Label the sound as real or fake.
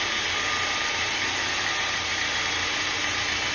real